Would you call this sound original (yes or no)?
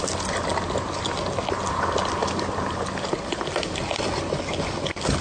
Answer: yes